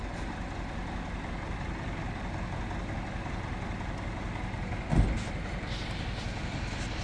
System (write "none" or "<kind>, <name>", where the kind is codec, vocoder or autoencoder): none